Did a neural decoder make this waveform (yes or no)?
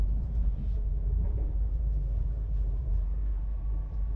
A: yes